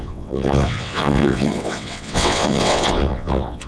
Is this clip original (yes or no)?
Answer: no